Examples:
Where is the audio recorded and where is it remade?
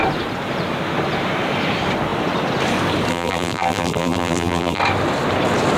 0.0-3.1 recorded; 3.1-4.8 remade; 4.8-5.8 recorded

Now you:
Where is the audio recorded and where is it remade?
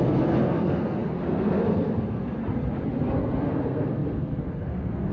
0.0-2.4 remade; 2.4-3.4 recorded; 3.4-5.1 remade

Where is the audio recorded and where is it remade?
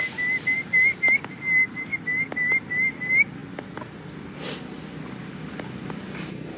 0.0-6.6 recorded